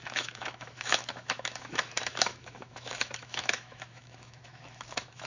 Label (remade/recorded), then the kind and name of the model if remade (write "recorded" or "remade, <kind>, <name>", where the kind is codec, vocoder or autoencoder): remade, autoencoder, DAC-VAE